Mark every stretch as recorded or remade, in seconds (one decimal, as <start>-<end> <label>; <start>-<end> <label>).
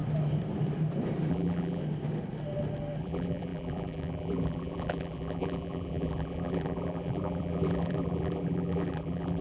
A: 0.0-1.3 recorded; 1.3-1.8 remade; 1.8-3.0 recorded; 3.0-9.4 remade